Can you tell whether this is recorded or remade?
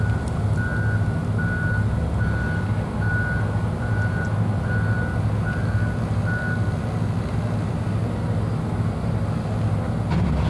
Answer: recorded